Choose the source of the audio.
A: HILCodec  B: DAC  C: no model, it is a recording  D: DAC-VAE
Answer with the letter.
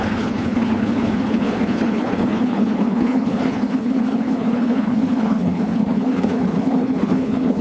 A